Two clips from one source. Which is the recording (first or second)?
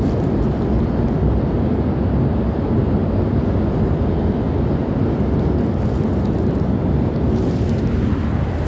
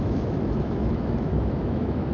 first